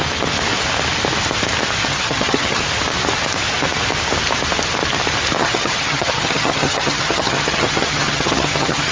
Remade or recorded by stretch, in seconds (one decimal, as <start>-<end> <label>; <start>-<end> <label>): 0.0-1.8 recorded; 1.8-2.6 remade; 2.6-5.4 recorded; 5.4-8.9 remade